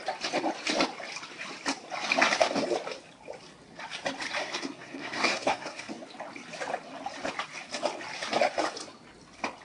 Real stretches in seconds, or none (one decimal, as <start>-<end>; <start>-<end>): 0.0-4.4; 5.9-9.6